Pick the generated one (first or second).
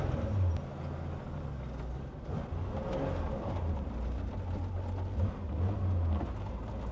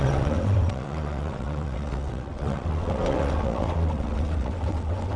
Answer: second